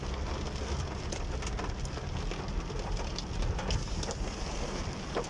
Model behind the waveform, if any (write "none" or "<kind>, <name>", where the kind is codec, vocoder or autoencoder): none